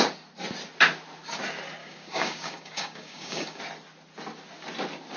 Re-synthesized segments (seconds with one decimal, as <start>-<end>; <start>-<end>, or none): 1.8-3.6